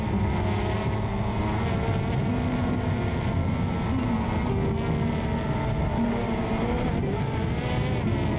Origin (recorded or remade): recorded